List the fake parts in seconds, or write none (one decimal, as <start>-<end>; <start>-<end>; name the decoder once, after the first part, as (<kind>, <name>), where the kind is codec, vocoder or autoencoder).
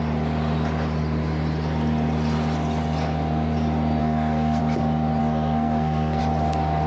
4.0-4.6 (codec, SNAC); 5.2-6.2